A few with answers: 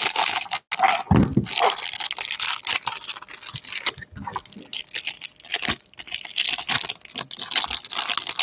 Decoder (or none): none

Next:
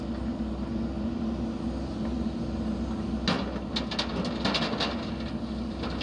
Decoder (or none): none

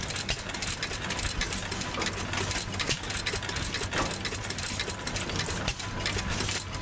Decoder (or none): none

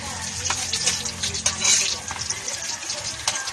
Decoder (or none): none